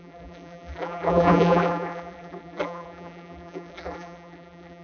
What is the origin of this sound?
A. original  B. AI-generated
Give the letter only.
B